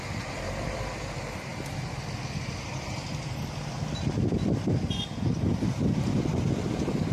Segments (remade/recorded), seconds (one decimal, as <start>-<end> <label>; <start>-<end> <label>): 0.0-7.1 recorded